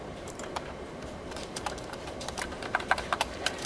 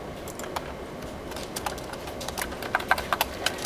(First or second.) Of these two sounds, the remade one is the first